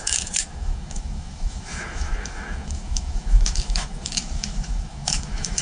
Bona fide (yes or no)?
no